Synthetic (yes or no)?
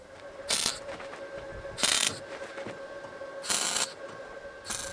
no